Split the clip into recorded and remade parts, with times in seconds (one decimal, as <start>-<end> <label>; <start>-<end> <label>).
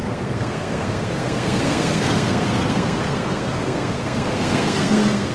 0.0-5.3 remade